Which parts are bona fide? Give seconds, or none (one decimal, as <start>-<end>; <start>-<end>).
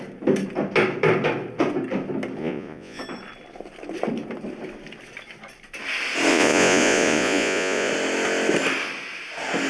0.0-2.4; 3.0-6.3; 7.9-9.7